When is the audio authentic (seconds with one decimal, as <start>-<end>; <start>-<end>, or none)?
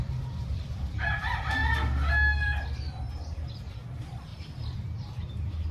1.6-3.5